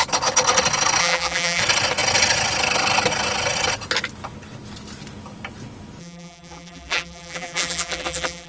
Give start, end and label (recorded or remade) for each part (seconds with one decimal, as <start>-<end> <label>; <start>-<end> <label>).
0.0-1.0 recorded; 1.0-1.6 remade; 1.6-6.0 recorded; 6.0-8.5 remade